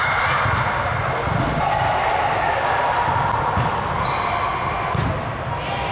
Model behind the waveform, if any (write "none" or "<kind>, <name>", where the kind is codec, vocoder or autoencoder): none